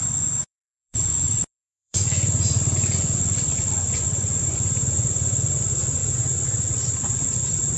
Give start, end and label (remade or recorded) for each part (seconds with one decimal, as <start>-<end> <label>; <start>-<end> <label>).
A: 0.0-6.0 remade; 6.0-7.0 recorded; 7.0-7.8 remade